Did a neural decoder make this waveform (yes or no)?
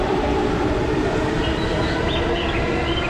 yes